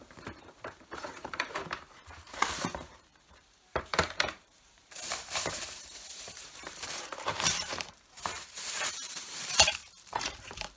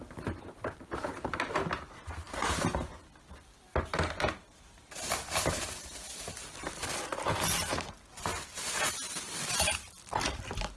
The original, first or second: second